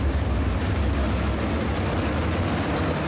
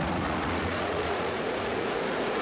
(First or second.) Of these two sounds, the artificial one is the second